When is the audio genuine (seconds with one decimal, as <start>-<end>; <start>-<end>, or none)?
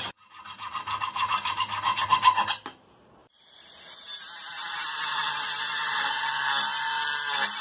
0.0-3.2; 6.2-7.6